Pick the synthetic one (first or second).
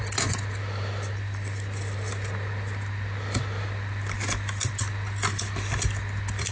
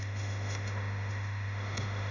second